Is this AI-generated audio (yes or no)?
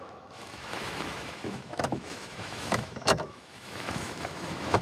yes